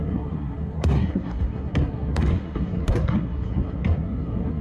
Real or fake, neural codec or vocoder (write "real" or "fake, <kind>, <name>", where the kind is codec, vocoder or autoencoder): fake, codec, SNAC